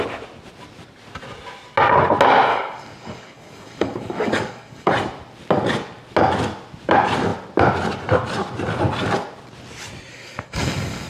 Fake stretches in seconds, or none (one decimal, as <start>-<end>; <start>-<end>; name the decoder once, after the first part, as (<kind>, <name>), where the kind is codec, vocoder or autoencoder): 2.5-4.9 (codec, DAC); 10.1-11.1